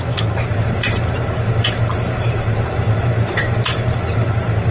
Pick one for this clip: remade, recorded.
remade